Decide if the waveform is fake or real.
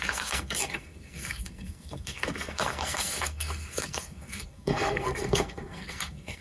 fake